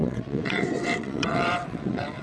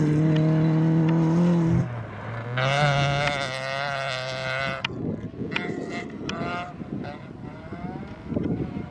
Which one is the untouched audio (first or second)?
second